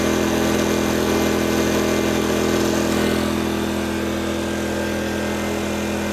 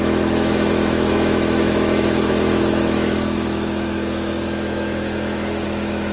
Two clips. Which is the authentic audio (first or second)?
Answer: first